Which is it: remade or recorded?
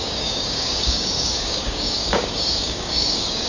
remade